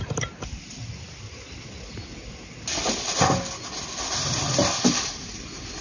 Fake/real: real